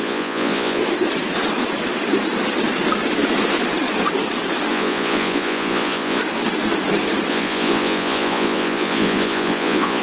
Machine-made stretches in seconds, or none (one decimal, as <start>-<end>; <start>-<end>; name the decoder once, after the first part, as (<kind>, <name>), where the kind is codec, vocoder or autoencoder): 0.0-0.8 (vocoder, Vocos); 4.7-6.2; 7.3-10.0